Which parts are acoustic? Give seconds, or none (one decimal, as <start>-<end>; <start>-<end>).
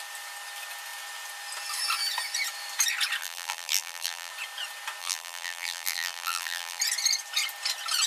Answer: 0.0-3.2; 4.3-5.0; 6.8-8.1